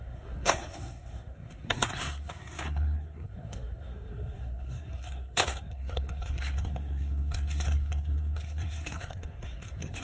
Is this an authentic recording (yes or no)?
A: no